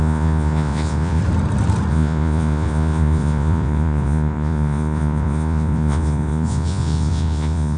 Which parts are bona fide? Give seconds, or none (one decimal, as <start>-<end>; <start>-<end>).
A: 1.2-1.9

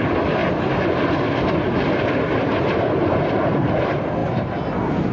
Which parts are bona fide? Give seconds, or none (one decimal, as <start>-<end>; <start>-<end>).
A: 0.0-5.1

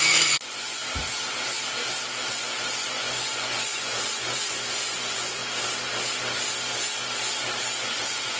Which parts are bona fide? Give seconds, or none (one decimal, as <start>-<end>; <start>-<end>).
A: 0.8-2.3; 5.4-7.6

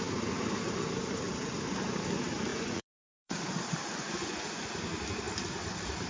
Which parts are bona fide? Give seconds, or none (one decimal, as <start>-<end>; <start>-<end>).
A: 0.0-2.5; 3.4-3.9; 4.7-6.1

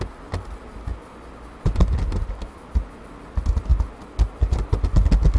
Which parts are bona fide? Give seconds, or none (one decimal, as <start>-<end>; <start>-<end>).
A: 0.0-5.4

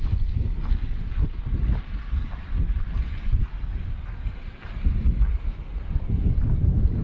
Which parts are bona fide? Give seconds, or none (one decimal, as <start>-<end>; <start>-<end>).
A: 0.0-7.0